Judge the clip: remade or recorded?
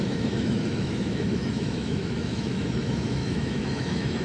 remade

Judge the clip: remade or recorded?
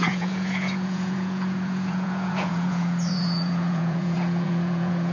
remade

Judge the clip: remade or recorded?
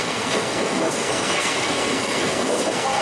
remade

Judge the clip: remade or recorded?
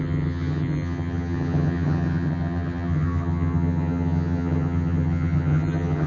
remade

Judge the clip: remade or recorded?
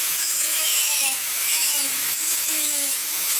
remade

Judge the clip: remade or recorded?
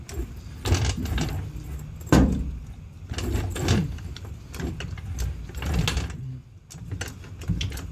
recorded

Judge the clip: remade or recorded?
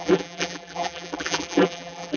remade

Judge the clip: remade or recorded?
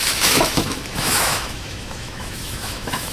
remade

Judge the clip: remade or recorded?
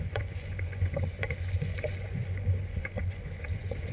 remade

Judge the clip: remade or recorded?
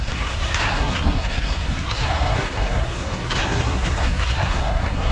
remade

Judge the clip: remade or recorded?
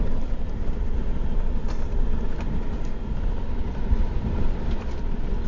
recorded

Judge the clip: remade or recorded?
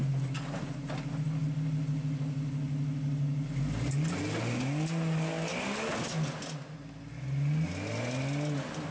recorded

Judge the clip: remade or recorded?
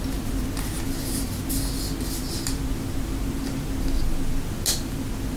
recorded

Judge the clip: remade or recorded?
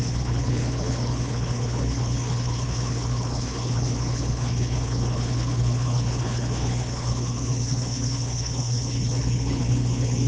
remade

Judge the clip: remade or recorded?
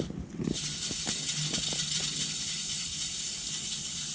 recorded